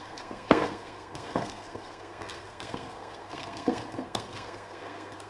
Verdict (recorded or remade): remade